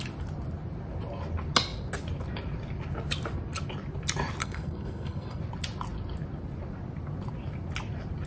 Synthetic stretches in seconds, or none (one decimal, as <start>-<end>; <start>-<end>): 4.4-5.4